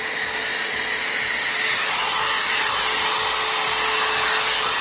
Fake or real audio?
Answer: real